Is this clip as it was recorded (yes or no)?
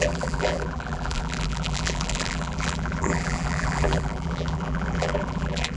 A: no